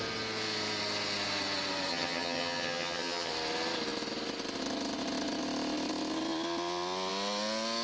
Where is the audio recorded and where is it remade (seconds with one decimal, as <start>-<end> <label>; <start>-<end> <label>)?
0.0-1.9 recorded; 1.9-3.3 remade; 3.3-7.8 recorded